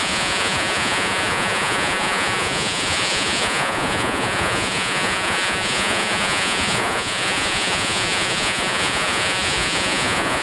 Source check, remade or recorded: remade